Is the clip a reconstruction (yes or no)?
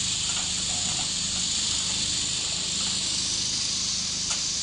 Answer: no